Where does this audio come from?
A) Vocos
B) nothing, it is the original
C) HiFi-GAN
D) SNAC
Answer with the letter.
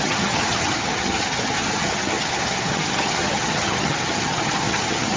C